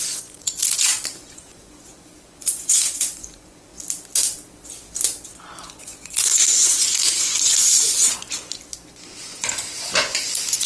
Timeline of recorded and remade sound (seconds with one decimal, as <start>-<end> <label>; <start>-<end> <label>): 0.0-0.6 remade; 0.6-1.2 recorded; 1.2-3.7 remade; 3.7-5.7 recorded; 5.7-8.0 remade; 8.0-8.9 recorded; 8.9-10.7 remade